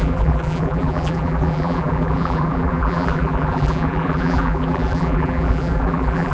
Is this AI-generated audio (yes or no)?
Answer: yes